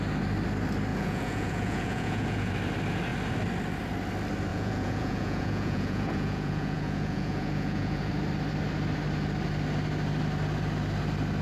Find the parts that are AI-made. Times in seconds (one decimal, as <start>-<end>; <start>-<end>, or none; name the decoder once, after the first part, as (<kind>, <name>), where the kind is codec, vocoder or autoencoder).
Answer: 0.9-2.5 (vocoder, Vocos); 4.5-8.1